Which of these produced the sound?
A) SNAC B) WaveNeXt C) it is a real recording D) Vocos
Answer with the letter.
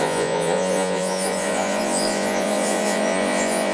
D